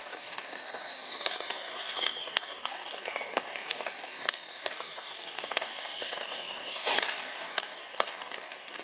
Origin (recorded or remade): remade